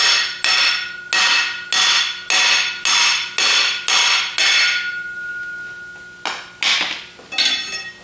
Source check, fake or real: real